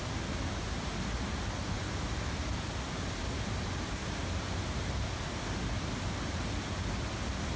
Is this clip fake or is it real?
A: real